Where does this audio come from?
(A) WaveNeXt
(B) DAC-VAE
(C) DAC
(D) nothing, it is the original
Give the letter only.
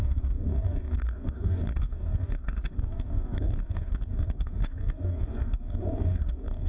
C